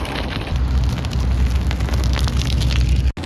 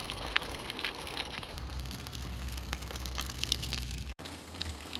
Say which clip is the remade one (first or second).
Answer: second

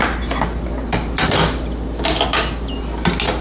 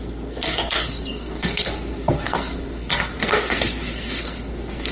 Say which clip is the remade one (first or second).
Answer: second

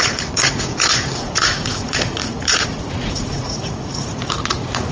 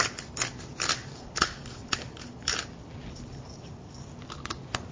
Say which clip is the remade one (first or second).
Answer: first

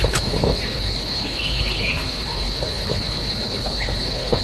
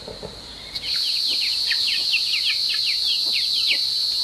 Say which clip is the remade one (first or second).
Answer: first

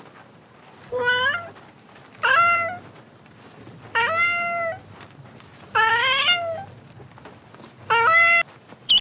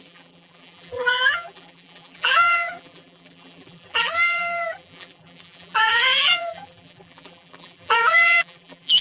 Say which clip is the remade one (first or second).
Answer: second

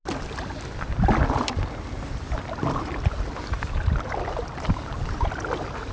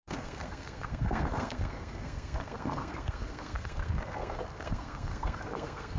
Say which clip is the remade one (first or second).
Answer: second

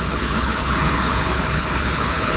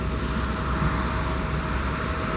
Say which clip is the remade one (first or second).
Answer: first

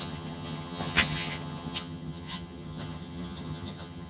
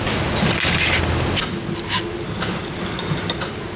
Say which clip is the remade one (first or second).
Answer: first